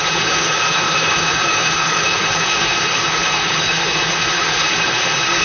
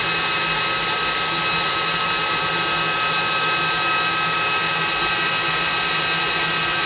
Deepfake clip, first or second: first